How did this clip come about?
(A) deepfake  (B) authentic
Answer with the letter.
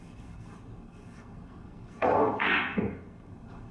A